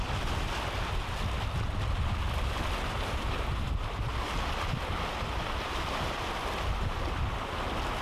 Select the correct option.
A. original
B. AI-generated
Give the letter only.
A